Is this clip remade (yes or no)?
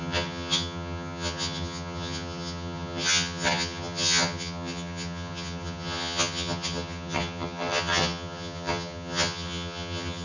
yes